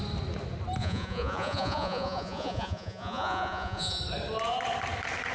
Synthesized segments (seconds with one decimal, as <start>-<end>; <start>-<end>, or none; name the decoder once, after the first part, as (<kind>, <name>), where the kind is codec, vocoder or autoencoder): 0.8-4.0 (vocoder, Vocos)